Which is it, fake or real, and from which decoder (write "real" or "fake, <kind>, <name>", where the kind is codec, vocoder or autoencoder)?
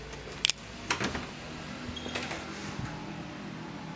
real